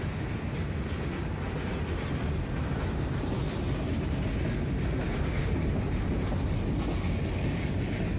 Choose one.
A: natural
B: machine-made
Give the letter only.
A